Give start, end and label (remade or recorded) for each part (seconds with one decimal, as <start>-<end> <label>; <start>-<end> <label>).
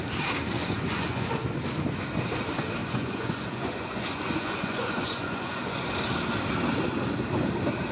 0.0-0.6 recorded; 0.6-1.3 remade; 1.3-2.8 recorded; 2.8-5.9 remade; 5.9-7.9 recorded